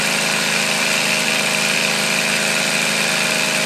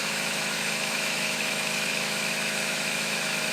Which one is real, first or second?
first